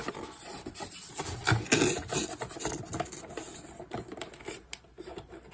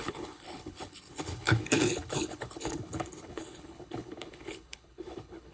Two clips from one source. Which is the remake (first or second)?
second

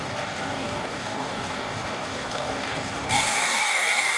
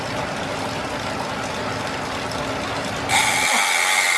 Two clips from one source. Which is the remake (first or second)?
first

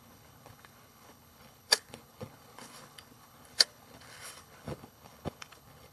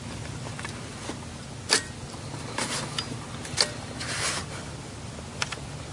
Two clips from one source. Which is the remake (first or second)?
first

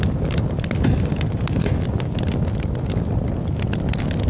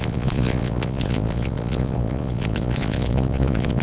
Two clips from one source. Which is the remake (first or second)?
second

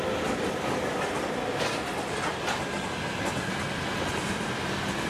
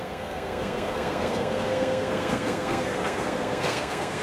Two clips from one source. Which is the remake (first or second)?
second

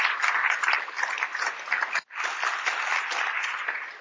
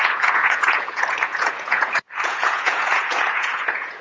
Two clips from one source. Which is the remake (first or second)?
second